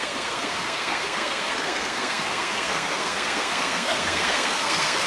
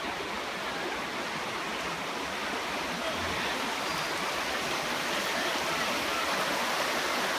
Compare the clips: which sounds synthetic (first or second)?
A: first